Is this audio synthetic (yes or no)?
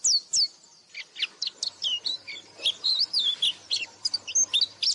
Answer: no